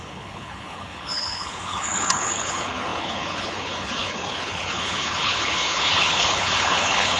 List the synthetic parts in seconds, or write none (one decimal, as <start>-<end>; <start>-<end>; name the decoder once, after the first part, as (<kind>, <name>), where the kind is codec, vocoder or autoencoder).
0.0-7.2 (codec, HILCodec)